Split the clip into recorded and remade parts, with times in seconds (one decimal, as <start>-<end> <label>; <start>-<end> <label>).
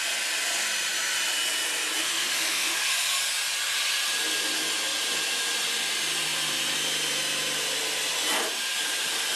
0.0-2.0 recorded; 2.0-3.2 remade; 3.2-9.4 recorded